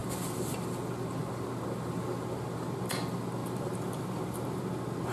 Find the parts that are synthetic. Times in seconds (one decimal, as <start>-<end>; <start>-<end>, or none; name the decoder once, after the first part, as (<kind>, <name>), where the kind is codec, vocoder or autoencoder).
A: 3.4-4.6 (vocoder, BigVGAN v2)